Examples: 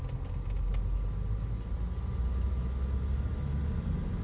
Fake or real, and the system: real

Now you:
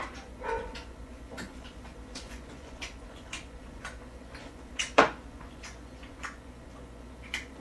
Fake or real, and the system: fake, vocoder, Vocos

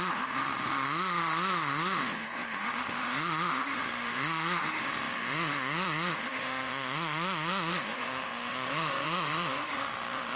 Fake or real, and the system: fake, autoencoder, DAC-VAE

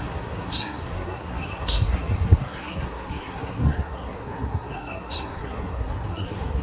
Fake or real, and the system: fake, codec, SNAC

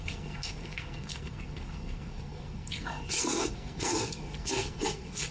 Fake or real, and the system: fake, codec, SNAC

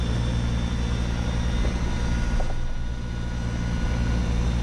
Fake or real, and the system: real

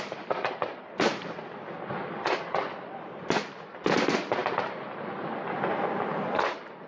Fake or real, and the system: fake, vocoder, BigVGAN v2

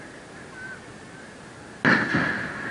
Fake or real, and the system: real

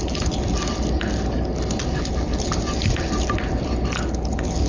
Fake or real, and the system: real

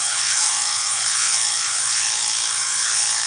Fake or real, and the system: fake, codec, HILCodec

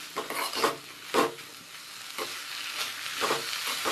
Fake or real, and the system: real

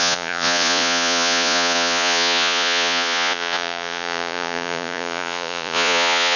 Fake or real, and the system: fake, vocoder, Vocos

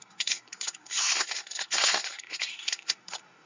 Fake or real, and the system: fake, codec, SNAC